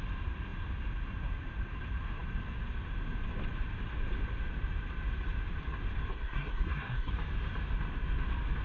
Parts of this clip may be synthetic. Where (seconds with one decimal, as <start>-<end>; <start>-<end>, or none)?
6.1-7.1